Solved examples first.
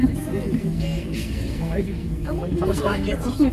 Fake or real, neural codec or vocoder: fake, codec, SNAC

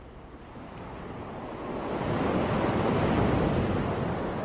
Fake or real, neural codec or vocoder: real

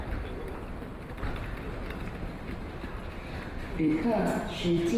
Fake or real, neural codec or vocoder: fake, vocoder, BigVGAN v2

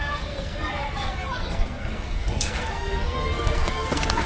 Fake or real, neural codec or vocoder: fake, codec, SNAC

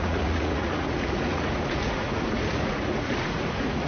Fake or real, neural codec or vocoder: fake, vocoder, Vocos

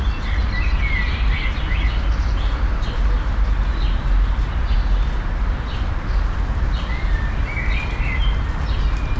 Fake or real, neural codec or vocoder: real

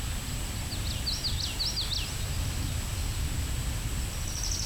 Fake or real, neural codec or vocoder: real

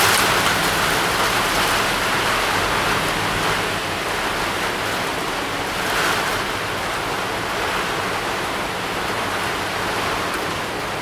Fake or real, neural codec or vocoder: real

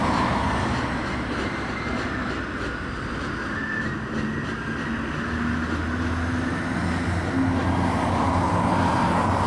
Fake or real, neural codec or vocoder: real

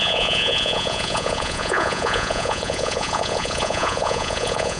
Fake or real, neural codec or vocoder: fake, vocoder, Vocos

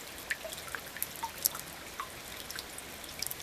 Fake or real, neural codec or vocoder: real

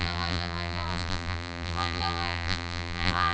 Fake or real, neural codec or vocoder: fake, vocoder, BigVGAN v2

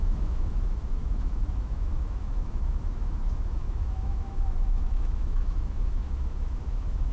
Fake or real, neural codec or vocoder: fake, autoencoder, DAC-VAE